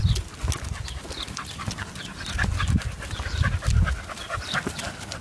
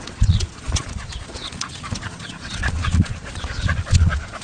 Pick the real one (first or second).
first